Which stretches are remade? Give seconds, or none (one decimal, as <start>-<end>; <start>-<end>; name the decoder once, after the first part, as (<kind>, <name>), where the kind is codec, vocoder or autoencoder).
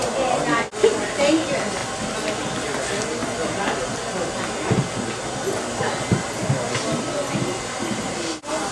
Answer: none